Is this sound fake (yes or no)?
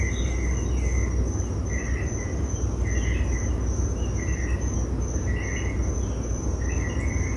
no